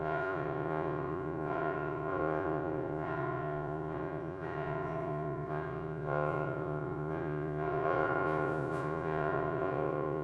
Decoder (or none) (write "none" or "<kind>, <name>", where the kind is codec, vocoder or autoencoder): vocoder, Vocos